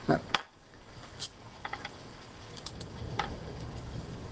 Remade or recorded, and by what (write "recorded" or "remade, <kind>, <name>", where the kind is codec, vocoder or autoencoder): remade, codec, DAC